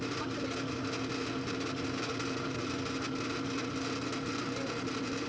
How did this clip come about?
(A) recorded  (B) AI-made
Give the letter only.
A